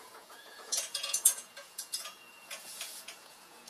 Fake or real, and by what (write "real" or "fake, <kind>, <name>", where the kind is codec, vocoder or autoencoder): fake, vocoder, Vocos